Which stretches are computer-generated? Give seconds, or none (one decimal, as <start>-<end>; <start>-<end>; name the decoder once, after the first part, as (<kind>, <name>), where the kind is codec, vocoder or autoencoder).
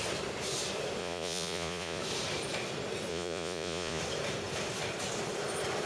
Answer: 1.0-2.0 (vocoder, Vocos); 3.1-4.0